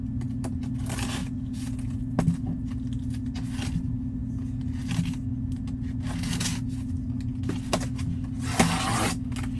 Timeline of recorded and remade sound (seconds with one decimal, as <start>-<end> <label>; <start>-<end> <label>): 0.0-1.2 recorded; 1.2-2.0 remade; 2.0-9.6 recorded